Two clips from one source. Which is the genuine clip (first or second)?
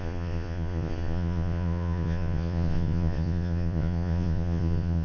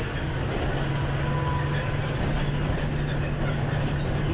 second